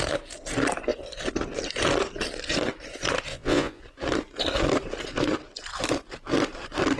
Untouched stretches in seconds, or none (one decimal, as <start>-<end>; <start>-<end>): 0.0-3.3; 3.8-7.0